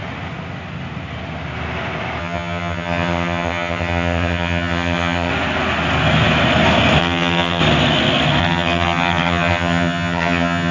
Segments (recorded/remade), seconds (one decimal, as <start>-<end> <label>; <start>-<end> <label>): 0.0-2.2 recorded; 2.2-5.3 remade; 5.3-7.0 recorded; 7.0-7.6 remade; 7.6-8.4 recorded; 8.4-10.7 remade